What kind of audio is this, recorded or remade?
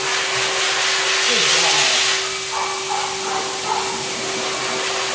recorded